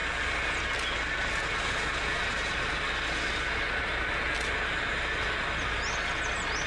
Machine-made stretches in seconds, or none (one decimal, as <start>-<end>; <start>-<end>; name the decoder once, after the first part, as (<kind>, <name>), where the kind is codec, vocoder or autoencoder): none